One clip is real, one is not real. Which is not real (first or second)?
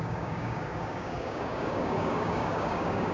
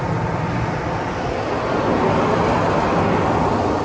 first